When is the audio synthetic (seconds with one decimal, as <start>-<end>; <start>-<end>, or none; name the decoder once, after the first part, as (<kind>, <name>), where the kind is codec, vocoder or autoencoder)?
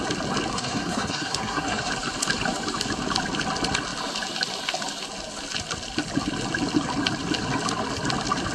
0.5-1.9 (codec, SNAC)